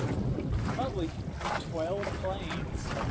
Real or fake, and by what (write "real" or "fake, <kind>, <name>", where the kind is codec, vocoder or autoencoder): real